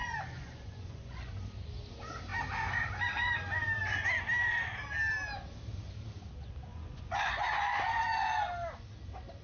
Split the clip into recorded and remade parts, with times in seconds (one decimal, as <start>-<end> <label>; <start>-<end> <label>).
0.0-1.3 remade; 1.3-6.7 recorded; 6.7-8.4 remade; 8.4-9.4 recorded